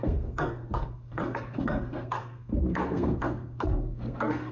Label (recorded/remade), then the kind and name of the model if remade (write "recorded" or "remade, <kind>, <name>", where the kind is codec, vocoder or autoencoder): remade, codec, SNAC